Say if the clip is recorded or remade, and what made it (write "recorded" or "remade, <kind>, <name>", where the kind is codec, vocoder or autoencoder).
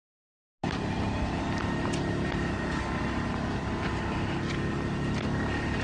recorded